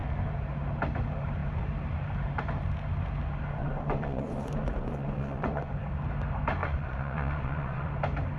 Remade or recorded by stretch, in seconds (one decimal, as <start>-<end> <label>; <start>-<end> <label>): 0.0-3.6 recorded; 3.6-5.7 remade; 5.7-6.6 recorded; 6.6-7.9 remade; 7.9-8.4 recorded